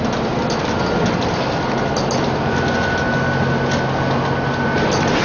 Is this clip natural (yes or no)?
yes